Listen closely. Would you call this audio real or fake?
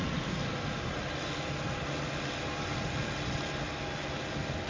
real